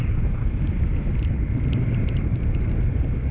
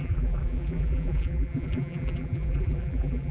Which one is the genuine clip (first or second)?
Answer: first